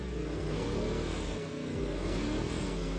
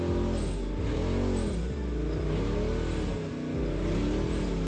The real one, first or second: second